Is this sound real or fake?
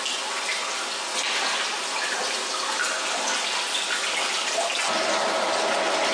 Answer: real